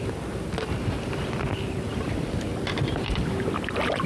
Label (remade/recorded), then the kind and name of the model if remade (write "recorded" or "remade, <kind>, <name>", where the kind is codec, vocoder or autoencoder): remade, vocoder, BigVGAN v2